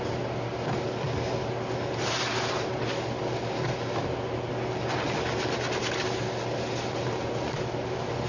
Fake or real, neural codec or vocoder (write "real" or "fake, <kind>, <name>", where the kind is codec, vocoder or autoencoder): real